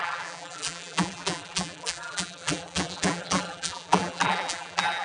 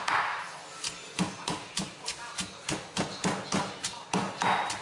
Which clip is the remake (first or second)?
first